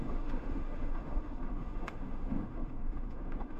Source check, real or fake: fake